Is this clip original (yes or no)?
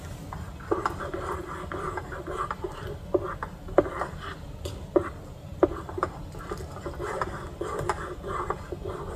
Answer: yes